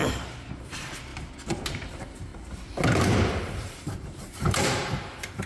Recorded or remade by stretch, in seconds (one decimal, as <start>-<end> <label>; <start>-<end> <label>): 0.0-1.1 remade; 1.1-1.9 recorded; 1.9-2.3 remade; 2.3-3.4 recorded; 3.4-5.5 remade